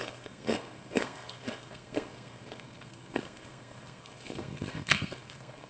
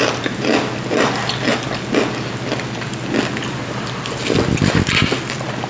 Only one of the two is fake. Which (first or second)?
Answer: first